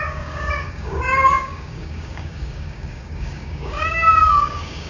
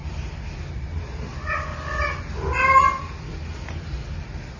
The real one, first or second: second